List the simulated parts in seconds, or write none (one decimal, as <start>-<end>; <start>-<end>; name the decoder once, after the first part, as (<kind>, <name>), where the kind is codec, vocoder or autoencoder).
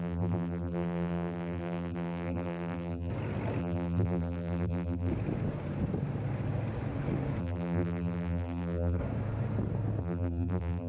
0.0-3.1 (vocoder, BigVGAN v2); 3.6-5.1; 7.4-9.0; 10.0-10.9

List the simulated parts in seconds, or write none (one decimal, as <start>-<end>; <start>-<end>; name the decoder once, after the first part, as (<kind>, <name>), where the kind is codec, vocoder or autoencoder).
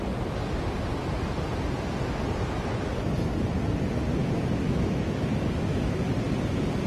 4.2-6.1 (autoencoder, DAC-VAE)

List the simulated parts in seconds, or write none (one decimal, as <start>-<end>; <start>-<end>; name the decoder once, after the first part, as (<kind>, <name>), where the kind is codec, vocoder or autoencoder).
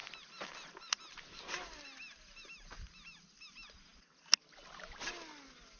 none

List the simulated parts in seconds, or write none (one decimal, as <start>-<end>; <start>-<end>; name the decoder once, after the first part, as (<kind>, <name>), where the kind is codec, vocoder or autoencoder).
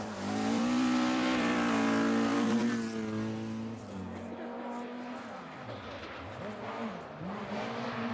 0.0-2.6 (vocoder, BigVGAN v2); 7.5-8.1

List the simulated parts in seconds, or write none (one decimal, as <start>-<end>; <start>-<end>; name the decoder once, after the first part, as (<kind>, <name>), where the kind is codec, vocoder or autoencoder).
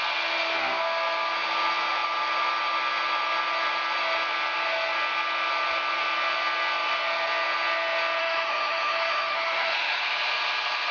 8.2-10.0 (autoencoder, DAC-VAE)